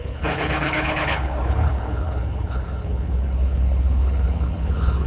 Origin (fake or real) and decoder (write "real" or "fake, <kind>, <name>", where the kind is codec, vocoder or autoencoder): fake, codec, HILCodec